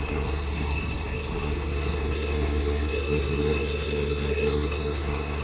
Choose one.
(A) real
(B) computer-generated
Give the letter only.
B